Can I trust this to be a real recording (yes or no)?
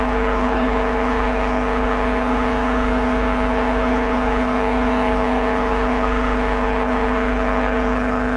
no